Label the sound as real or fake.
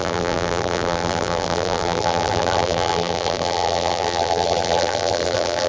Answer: fake